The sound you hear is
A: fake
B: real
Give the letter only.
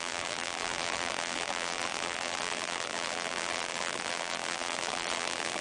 A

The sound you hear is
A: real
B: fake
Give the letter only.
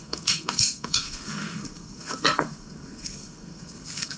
B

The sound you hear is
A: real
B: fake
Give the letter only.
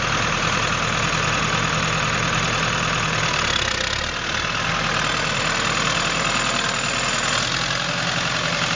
A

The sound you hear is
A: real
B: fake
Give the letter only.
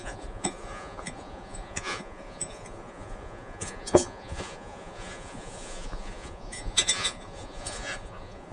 B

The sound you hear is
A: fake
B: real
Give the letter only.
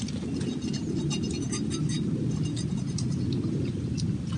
B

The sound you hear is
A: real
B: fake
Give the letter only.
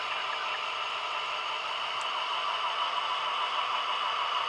B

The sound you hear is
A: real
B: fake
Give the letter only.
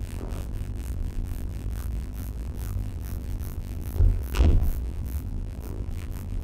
B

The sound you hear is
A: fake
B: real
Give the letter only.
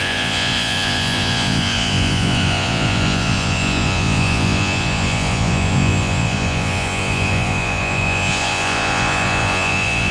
A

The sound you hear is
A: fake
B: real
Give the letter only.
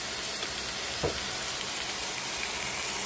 B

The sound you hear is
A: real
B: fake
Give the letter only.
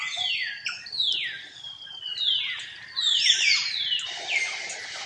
A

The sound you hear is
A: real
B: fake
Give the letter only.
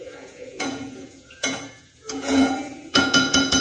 B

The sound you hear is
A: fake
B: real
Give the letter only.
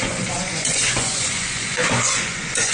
A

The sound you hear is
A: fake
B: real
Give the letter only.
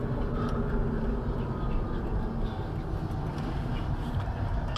B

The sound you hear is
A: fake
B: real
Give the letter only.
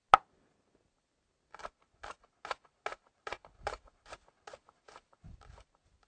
B